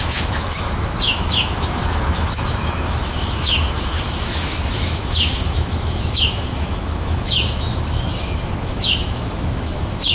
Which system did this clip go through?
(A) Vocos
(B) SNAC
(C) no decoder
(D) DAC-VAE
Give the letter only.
D